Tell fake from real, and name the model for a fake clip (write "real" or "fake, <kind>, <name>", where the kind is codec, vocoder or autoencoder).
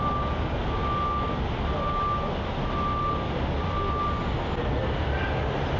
real